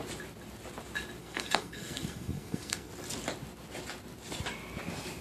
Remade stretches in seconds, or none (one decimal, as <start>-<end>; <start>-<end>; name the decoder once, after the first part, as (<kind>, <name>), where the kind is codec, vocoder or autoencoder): 1.2-2.9 (codec, SNAC)